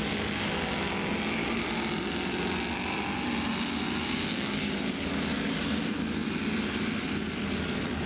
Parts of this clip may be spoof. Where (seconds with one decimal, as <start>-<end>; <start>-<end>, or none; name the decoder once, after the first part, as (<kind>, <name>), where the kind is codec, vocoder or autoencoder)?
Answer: 4.3-5.8 (codec, DAC)